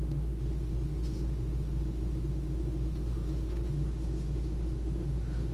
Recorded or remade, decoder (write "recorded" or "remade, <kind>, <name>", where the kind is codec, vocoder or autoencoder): remade, autoencoder, DAC-VAE